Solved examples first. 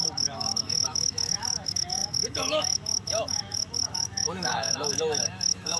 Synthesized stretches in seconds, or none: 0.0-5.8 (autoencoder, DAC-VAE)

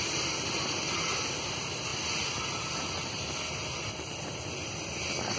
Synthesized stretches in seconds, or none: none

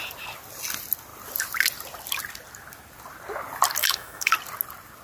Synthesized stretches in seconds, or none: 3.8-4.3 (autoencoder, DAC-VAE)

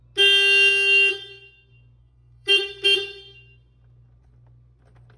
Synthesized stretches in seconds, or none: 2.0-2.7 (autoencoder, DAC-VAE)

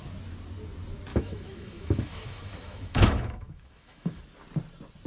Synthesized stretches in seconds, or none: 1.1-4.2 (autoencoder, DAC-VAE)